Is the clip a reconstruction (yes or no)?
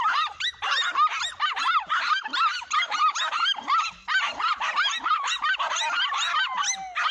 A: no